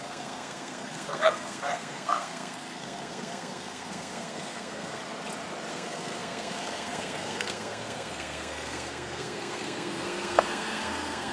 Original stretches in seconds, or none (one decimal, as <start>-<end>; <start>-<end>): 5.0-5.7